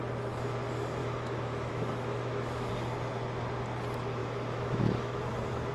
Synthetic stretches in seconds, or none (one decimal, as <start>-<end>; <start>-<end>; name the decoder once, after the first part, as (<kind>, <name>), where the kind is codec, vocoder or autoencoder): 1.0-2.7 (autoencoder, DAC-VAE); 4.2-5.2